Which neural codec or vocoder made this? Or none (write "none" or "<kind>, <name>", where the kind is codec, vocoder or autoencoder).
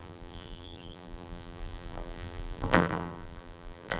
vocoder, BigVGAN v2